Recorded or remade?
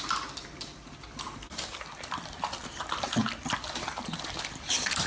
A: recorded